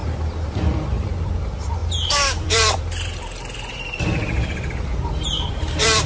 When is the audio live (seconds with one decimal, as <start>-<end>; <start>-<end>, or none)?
none